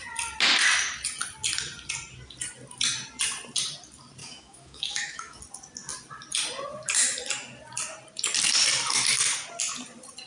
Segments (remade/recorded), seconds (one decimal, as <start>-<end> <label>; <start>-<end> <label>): 0.0-4.2 recorded; 4.2-5.4 remade; 5.4-10.3 recorded